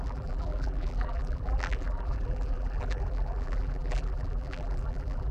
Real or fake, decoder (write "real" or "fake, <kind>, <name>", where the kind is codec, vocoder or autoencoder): fake, vocoder, BigVGAN v2